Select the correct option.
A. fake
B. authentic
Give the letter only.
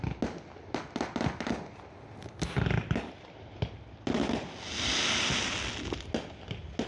B